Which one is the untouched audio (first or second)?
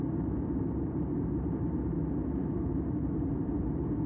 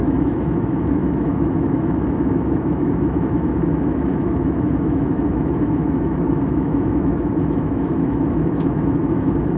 first